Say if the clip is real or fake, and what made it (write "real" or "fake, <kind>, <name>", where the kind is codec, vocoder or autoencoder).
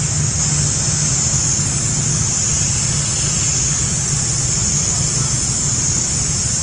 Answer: real